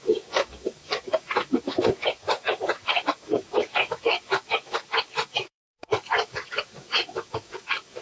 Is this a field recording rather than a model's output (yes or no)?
no